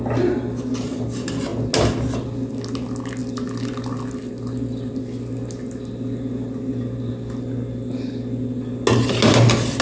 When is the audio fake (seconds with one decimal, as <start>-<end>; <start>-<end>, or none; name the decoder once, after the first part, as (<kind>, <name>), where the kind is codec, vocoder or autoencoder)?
none